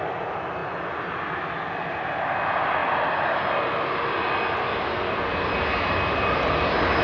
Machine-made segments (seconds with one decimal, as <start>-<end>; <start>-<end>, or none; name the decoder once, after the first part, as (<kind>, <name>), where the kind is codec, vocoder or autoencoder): none

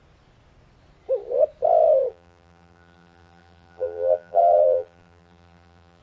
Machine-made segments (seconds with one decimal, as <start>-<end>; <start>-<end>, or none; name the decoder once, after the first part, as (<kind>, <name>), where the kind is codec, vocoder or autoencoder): 2.1-6.0 (vocoder, BigVGAN v2)

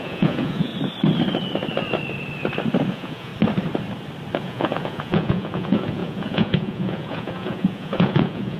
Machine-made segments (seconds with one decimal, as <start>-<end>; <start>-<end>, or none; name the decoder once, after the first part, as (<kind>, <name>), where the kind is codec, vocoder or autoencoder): 0.0-0.7 (vocoder, Vocos); 2.9-3.3; 4.4-8.6

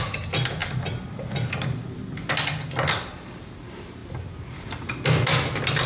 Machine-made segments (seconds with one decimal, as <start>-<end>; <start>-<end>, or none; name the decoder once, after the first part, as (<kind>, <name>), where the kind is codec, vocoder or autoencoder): none

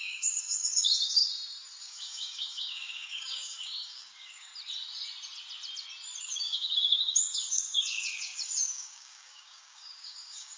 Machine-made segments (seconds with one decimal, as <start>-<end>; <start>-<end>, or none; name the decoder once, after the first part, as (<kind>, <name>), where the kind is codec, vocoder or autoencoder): 0.0-1.2 (codec, DAC); 1.8-4.5; 6.2-10.6

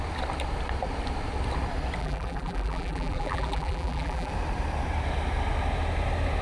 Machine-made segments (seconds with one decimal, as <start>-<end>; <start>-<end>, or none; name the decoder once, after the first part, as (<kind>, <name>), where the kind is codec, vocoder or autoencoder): 2.0-4.3 (vocoder, BigVGAN v2)

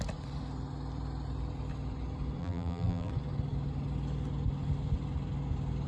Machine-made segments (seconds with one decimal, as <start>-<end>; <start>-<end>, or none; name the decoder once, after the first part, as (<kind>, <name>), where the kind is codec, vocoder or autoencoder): 2.4-3.1 (vocoder, BigVGAN v2)

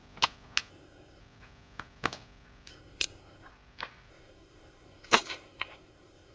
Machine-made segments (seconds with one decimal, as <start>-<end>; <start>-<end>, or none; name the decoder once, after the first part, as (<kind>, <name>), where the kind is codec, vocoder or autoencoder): 0.7-1.2 (codec, SNAC); 2.7-3.5; 4.1-6.3